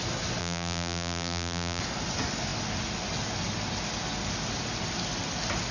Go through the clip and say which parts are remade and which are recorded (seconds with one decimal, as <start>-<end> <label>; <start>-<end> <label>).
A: 0.0-0.4 recorded; 0.4-1.8 remade; 1.8-5.7 recorded